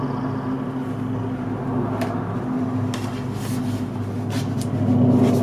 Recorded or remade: recorded